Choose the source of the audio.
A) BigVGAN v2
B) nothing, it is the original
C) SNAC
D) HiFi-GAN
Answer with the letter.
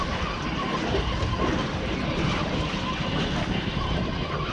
B